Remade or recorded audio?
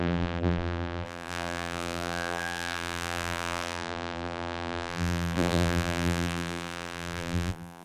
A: remade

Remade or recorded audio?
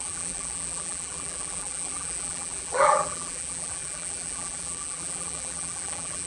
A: remade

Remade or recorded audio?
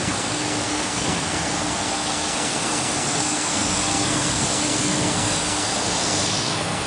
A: remade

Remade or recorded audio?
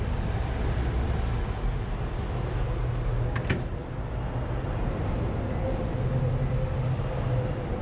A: recorded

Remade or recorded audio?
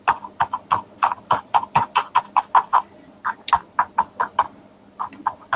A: recorded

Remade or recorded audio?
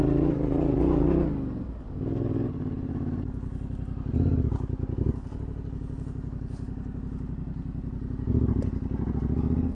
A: recorded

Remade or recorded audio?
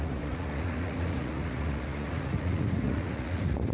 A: remade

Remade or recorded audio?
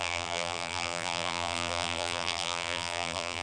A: remade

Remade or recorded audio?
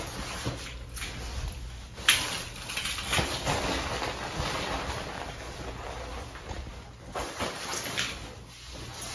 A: recorded